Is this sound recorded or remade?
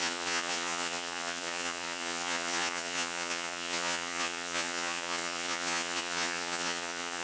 remade